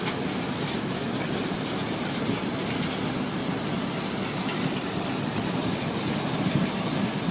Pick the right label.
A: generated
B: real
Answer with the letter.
B